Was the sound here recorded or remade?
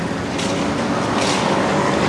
recorded